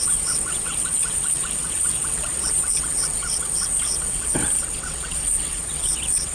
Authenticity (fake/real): fake